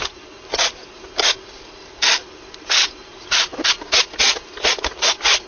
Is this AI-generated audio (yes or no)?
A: no